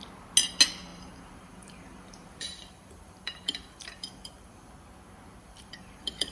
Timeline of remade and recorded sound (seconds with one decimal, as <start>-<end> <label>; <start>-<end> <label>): 0.0-0.9 recorded; 0.9-4.7 remade; 4.7-5.4 recorded; 5.4-6.3 remade